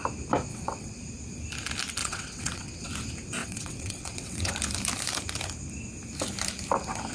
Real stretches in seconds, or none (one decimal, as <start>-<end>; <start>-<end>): 0.0-0.5; 1.0-2.0; 2.9-3.4; 4.5-7.1